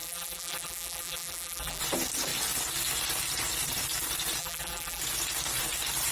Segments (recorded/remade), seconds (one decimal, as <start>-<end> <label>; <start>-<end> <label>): 0.0-1.8 remade; 1.8-4.4 recorded; 4.4-5.0 remade; 5.0-6.1 recorded